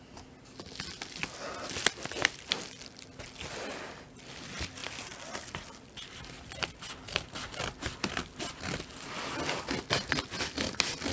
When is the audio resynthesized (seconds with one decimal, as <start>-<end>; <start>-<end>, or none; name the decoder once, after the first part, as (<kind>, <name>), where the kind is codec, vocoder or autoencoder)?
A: none